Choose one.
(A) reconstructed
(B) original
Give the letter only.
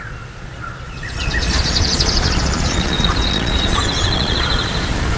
A